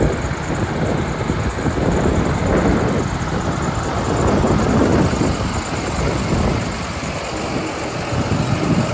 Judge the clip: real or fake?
real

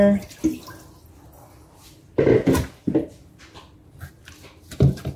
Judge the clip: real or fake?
real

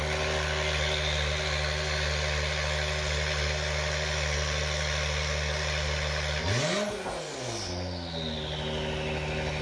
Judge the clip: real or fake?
real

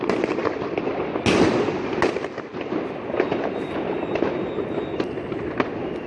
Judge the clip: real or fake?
real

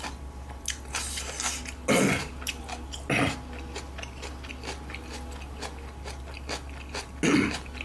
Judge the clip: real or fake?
real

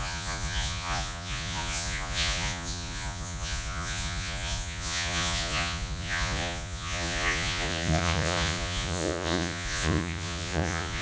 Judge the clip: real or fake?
fake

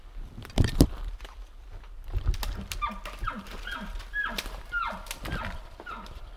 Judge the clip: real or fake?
fake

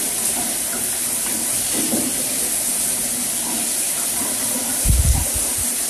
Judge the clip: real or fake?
fake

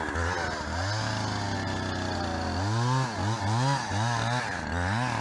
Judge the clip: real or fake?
real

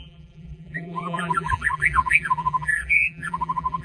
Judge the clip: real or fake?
fake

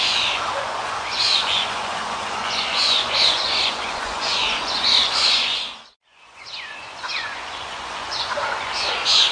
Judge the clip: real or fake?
fake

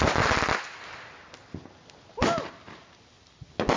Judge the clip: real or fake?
real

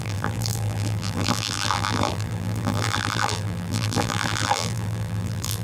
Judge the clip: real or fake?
fake